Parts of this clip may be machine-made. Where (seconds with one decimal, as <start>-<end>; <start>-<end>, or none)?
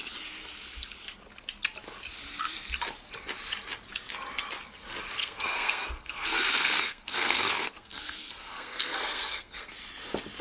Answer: 5.2-9.7